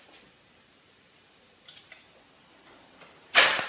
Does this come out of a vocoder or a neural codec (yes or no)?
yes